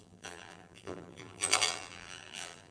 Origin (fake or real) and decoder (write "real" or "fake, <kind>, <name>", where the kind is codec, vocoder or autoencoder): fake, vocoder, BigVGAN v2